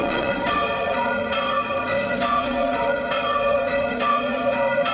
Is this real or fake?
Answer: fake